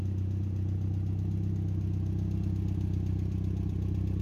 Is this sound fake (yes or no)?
no